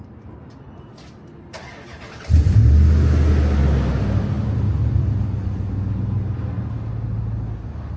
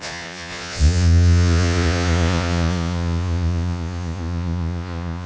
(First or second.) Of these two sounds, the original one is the first